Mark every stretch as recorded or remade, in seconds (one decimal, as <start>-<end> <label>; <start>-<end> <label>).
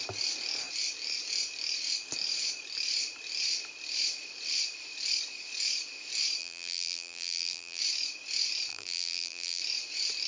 0.0-6.4 recorded; 6.4-7.8 remade; 7.8-8.7 recorded; 8.7-9.6 remade; 9.6-10.3 recorded